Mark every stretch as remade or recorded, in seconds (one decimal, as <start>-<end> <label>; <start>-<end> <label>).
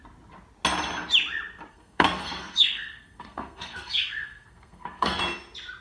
0.0-1.7 recorded; 1.7-5.2 remade; 5.2-5.8 recorded